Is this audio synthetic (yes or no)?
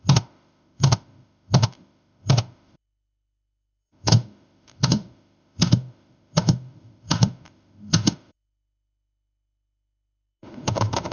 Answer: yes